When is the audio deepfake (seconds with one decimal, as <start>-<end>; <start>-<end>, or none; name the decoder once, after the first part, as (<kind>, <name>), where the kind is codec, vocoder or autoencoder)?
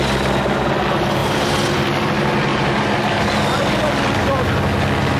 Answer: 1.2-1.8 (vocoder, BigVGAN v2); 2.5-3.3